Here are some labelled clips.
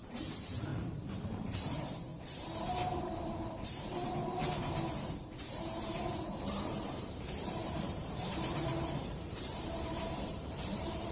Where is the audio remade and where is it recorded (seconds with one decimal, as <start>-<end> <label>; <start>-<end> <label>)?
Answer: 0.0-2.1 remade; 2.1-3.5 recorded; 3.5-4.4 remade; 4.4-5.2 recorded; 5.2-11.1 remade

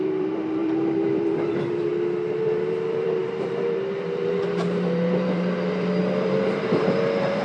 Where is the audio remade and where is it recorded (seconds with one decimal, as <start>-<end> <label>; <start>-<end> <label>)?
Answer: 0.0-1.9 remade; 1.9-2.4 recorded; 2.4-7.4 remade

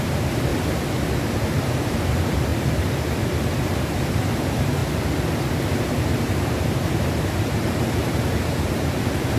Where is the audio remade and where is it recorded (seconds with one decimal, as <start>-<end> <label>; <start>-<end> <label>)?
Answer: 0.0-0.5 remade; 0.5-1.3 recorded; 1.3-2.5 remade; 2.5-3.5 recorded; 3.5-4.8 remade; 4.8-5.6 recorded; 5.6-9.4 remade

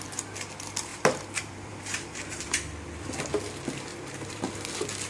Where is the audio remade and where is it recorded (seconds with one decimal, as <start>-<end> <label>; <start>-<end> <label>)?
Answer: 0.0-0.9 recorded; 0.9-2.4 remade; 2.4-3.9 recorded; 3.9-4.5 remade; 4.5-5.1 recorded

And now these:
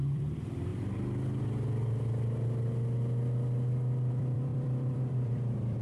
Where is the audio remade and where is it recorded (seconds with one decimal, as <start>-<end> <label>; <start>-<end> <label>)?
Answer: 0.0-0.7 remade; 0.7-4.1 recorded; 4.1-5.8 remade

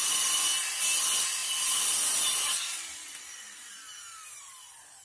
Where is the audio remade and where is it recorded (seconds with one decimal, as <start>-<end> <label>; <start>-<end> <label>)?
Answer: 0.0-5.0 recorded